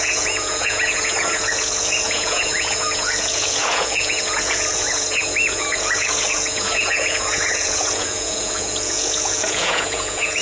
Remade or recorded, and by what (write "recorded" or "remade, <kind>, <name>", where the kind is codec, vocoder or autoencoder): remade, vocoder, Vocos